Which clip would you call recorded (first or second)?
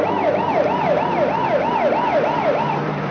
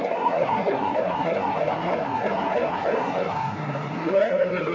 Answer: first